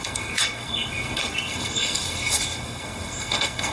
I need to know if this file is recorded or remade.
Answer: remade